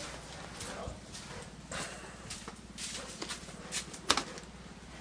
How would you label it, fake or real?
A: real